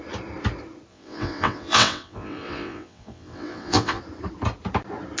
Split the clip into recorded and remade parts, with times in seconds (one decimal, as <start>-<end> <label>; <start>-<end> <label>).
0.0-0.9 recorded; 0.9-4.0 remade; 4.0-5.2 recorded